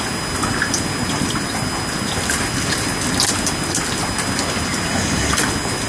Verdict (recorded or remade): recorded